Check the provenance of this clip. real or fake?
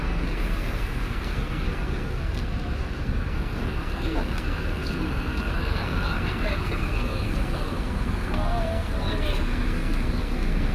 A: fake